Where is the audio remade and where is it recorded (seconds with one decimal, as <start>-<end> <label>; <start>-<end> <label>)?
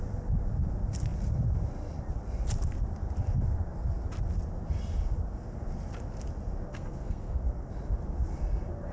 0.0-6.7 recorded; 6.7-7.7 remade; 7.7-8.9 recorded